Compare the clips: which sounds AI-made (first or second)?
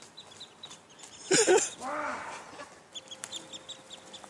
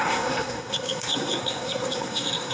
second